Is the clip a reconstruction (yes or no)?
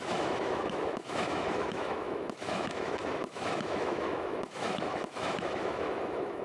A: yes